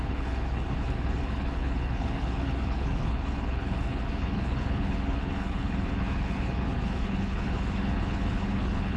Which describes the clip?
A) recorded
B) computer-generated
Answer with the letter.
B